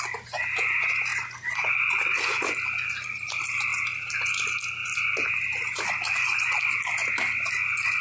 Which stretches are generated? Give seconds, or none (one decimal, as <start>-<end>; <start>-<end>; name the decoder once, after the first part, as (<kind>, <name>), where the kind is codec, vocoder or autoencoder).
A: 7.0-7.5 (vocoder, BigVGAN v2)

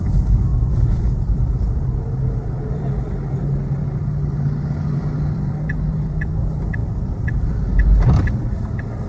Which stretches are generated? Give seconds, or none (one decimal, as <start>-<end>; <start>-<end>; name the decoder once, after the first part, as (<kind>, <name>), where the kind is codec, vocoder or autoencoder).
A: 0.5-2.0 (vocoder, BigVGAN v2)

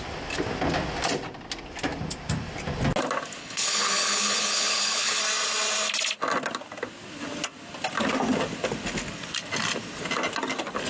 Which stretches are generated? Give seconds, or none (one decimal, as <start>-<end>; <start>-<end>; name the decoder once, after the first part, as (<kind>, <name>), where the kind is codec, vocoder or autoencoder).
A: 3.4-5.2 (codec, HILCodec)